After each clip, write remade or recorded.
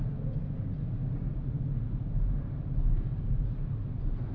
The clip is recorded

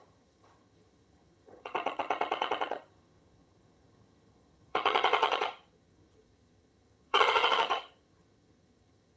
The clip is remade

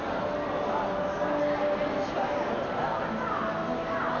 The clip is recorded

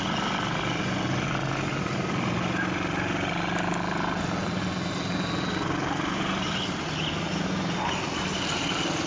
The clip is recorded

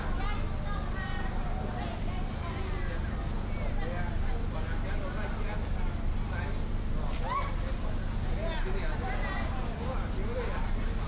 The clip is recorded